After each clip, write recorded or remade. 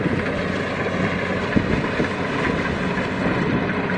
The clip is recorded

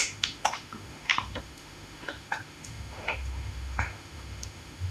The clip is remade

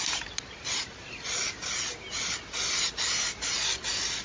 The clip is recorded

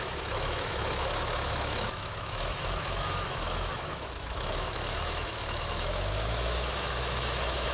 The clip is remade